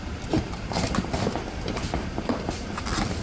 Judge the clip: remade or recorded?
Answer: remade